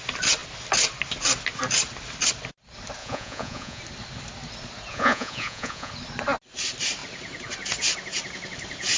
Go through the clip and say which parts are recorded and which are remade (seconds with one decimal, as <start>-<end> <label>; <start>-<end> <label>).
0.0-3.0 recorded; 3.0-3.8 remade; 3.8-4.9 recorded; 4.9-5.9 remade; 5.9-9.0 recorded